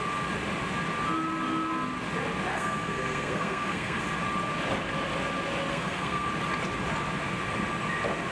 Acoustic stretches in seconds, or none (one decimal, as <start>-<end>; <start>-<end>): 0.0-2.5; 4.0-5.7; 6.3-8.3